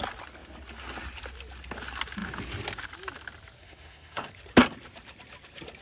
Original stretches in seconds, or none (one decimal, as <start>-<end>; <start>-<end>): 0.0-3.6; 4.3-5.8